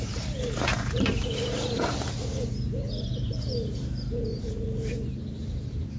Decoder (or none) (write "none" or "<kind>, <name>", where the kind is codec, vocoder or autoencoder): vocoder, BigVGAN v2